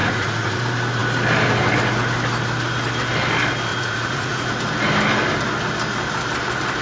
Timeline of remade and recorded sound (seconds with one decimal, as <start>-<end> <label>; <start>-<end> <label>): 0.0-0.6 remade; 0.6-3.7 recorded; 3.7-4.5 remade; 4.5-6.8 recorded